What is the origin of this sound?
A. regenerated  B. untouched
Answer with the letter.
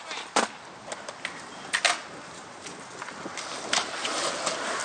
B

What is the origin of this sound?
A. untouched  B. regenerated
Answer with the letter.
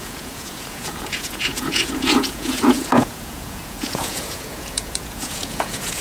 B